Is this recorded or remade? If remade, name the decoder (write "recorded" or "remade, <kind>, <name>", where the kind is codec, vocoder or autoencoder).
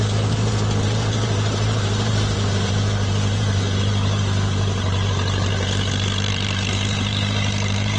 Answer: remade, vocoder, BigVGAN v2